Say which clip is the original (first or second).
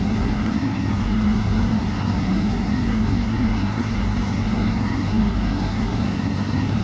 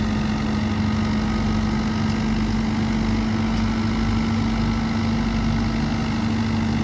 second